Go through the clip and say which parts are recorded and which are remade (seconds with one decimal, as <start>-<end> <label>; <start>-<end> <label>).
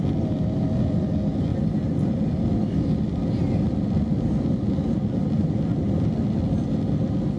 0.0-7.4 recorded